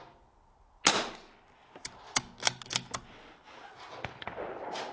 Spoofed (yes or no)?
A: no